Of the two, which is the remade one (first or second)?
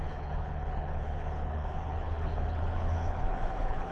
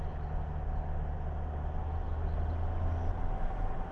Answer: first